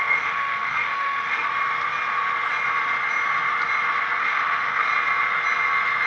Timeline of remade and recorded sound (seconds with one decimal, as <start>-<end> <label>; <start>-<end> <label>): 0.0-1.5 remade; 1.5-4.2 recorded; 4.2-4.9 remade; 4.9-6.1 recorded